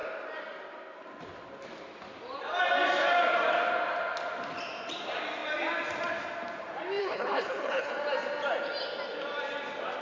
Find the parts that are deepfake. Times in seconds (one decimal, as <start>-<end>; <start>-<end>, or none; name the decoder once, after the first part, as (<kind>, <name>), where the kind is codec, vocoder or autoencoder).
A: 7.0-7.9 (codec, HILCodec)